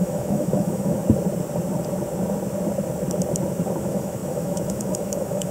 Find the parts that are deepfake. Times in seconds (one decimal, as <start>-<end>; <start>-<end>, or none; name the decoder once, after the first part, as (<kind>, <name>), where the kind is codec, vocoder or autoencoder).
0.0-1.0 (autoencoder, DAC-VAE); 3.8-5.5